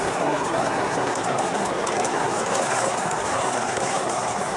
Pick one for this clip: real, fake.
fake